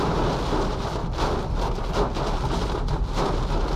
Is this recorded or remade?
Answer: recorded